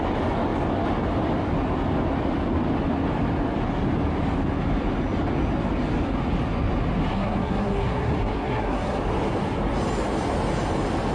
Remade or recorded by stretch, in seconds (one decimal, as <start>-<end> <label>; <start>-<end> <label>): 0.0-7.1 recorded; 7.1-9.0 remade; 9.0-11.1 recorded